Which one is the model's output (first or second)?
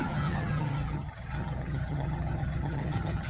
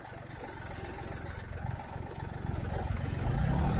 first